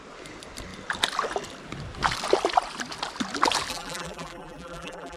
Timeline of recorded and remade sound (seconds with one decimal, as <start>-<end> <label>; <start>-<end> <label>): 0.0-3.7 recorded; 3.7-5.2 remade